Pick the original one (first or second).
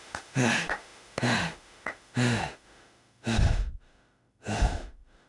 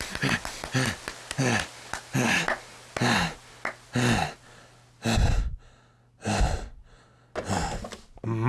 second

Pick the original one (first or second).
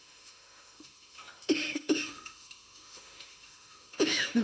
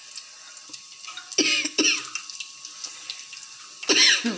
second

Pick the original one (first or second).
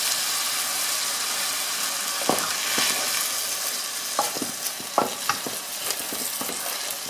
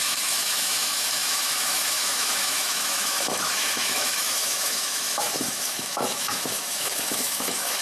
first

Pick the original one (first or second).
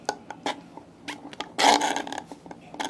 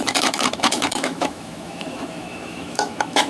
first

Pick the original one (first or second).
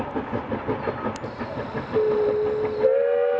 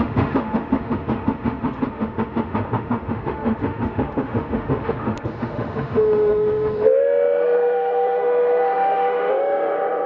first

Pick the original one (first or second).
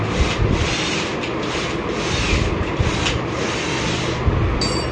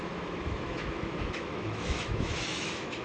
first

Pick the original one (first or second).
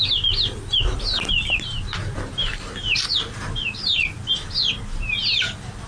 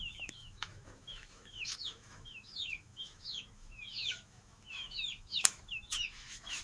first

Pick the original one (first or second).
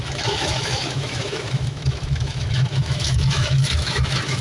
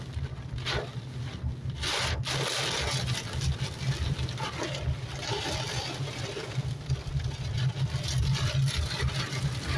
second